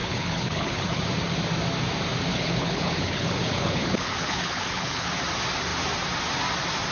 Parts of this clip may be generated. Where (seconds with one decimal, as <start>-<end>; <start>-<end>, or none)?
0.0-1.0; 2.3-5.1